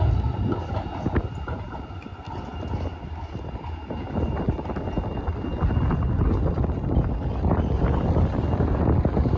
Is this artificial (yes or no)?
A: no